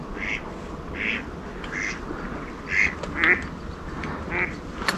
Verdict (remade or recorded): recorded